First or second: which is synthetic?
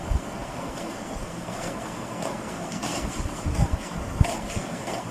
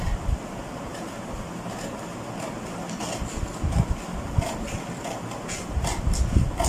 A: first